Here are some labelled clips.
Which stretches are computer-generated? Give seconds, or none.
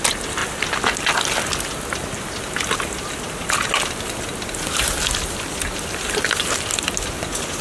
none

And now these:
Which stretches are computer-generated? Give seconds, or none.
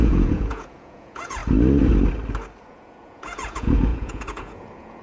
0.0-1.4 (vocoder, Vocos); 2.7-5.0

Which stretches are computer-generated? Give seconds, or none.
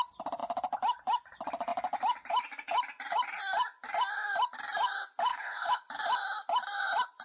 5.3-5.9 (codec, HILCodec)